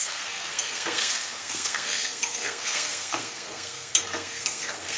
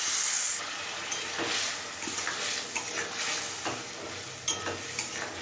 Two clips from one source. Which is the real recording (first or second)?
second